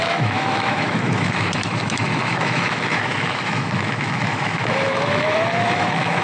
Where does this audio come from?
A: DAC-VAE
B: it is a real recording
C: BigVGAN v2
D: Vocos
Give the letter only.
A